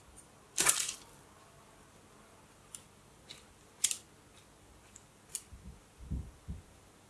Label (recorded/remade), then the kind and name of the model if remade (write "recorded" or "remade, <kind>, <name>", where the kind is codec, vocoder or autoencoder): recorded